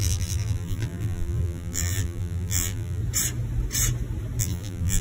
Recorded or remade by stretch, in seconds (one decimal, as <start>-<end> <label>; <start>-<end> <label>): 0.0-3.0 remade; 3.0-4.4 recorded; 4.4-5.0 remade